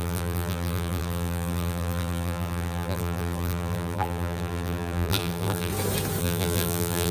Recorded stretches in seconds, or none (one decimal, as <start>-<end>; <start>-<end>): 5.7-6.2